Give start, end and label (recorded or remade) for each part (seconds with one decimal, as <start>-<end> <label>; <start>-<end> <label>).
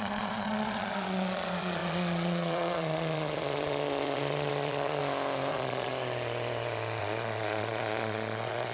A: 0.0-5.0 remade; 5.0-5.5 recorded; 5.5-5.9 remade; 5.9-7.0 recorded; 7.0-8.7 remade